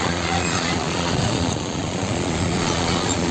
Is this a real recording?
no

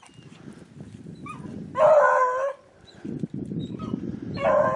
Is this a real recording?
yes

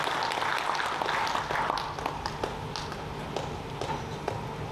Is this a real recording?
yes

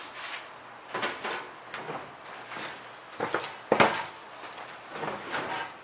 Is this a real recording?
yes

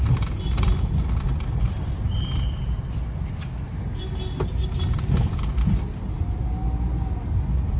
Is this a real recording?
yes